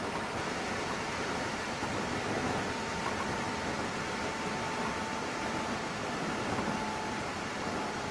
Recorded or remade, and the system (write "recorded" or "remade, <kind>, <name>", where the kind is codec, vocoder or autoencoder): recorded